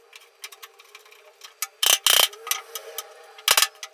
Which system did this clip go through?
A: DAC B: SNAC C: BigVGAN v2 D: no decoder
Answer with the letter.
D